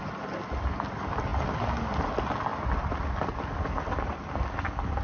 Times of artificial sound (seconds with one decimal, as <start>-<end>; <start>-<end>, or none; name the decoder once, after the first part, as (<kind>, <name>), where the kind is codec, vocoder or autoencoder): none